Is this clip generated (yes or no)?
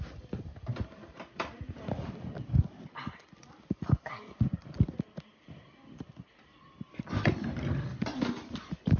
no